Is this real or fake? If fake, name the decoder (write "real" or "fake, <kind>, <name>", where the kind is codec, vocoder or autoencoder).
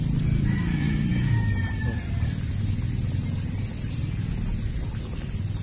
real